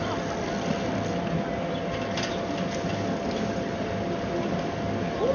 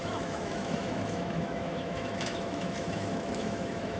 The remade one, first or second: second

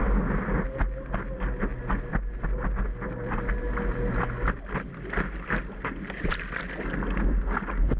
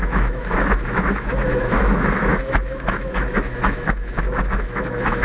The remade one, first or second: second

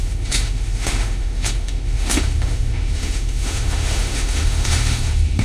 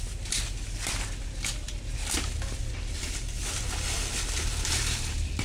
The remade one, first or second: first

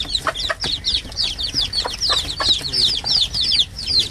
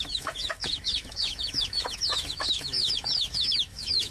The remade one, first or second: second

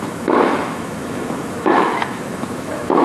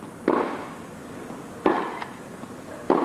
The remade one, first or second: first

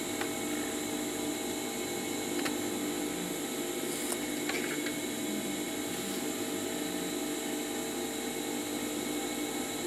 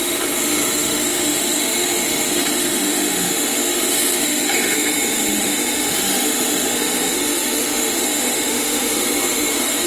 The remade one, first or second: second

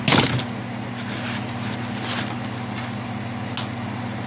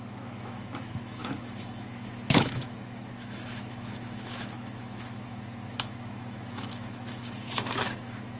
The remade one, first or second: second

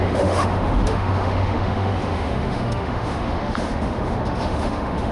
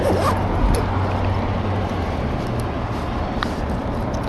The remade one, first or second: first